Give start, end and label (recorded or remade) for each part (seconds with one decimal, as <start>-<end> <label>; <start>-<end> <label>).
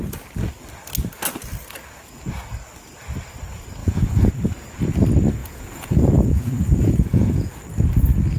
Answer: 0.0-3.8 recorded; 3.8-4.3 remade; 4.3-5.4 recorded; 5.4-7.5 remade; 7.5-8.4 recorded